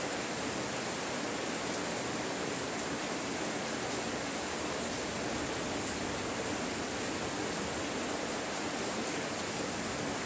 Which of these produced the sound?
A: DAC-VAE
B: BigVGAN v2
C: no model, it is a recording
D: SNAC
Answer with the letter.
C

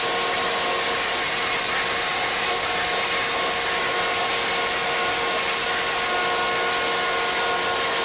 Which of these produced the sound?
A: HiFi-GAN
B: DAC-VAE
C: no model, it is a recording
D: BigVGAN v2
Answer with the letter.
C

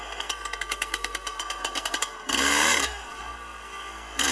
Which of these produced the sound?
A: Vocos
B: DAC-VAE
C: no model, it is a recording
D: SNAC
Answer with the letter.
D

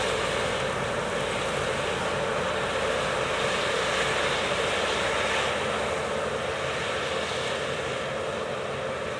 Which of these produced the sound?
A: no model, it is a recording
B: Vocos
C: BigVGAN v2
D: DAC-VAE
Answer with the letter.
A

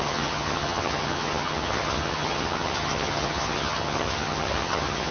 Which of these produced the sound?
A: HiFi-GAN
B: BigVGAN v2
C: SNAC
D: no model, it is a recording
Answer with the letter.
A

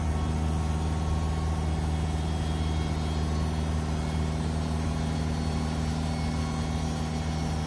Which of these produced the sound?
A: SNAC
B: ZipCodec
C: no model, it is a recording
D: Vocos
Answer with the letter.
C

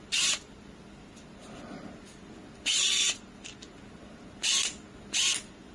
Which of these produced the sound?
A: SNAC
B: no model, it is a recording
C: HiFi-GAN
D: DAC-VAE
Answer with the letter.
B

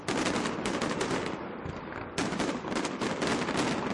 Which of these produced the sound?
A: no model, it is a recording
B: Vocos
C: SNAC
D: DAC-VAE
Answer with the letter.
A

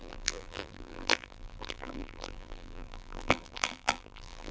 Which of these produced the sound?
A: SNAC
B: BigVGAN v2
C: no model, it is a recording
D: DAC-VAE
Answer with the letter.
B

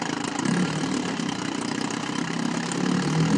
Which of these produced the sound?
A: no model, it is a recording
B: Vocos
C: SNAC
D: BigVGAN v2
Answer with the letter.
D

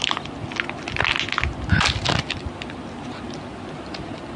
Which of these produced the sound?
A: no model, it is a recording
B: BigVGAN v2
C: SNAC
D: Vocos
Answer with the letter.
A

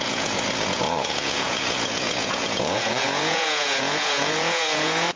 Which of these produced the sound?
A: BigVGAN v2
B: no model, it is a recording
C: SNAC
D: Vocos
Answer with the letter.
D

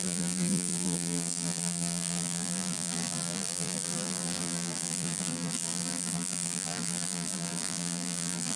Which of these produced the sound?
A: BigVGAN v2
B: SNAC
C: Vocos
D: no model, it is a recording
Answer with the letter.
A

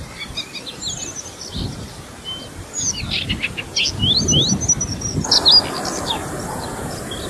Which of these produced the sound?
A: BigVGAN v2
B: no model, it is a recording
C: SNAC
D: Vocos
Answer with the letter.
B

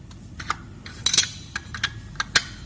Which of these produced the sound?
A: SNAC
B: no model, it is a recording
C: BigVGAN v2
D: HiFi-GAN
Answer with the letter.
B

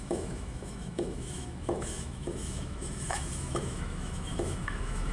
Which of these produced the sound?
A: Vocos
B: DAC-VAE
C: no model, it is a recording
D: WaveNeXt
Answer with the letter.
B